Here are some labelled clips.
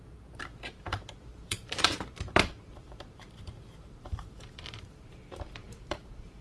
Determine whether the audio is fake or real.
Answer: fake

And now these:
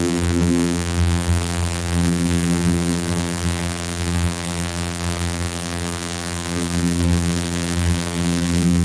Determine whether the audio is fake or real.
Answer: fake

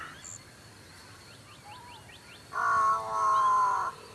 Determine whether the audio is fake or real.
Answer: real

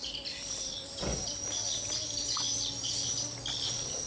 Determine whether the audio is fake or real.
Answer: real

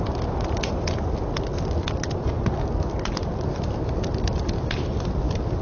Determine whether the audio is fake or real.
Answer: real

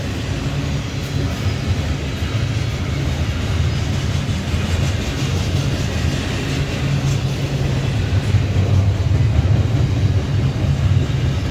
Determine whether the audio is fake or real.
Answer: real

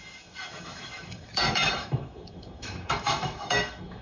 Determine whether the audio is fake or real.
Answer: fake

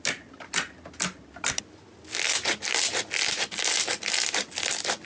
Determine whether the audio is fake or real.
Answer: real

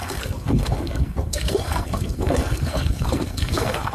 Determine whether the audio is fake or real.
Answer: fake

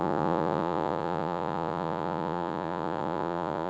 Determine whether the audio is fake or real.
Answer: fake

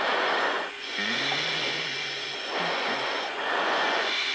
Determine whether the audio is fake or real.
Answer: fake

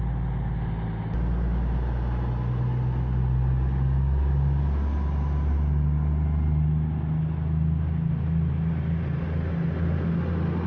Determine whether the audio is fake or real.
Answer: real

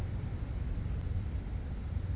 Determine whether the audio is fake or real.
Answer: real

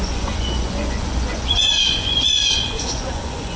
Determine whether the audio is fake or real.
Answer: fake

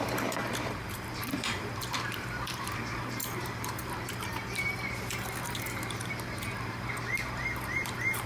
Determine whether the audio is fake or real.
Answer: fake